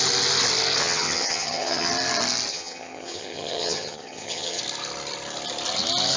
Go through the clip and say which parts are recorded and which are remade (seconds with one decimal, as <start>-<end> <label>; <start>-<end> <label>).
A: 0.0-0.8 recorded; 0.8-1.9 remade; 1.9-2.5 recorded; 2.5-4.6 remade; 4.6-6.2 recorded